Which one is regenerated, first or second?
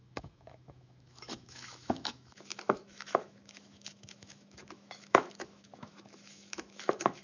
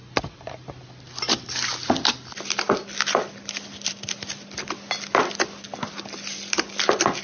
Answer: first